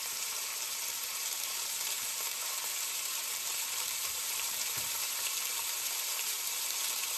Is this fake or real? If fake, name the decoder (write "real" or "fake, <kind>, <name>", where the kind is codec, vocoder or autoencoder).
fake, vocoder, BigVGAN v2